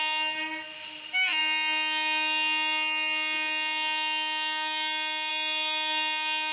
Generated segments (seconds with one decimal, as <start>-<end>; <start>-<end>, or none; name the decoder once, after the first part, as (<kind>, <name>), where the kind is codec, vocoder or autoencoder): none